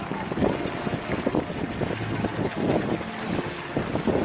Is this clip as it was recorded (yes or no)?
yes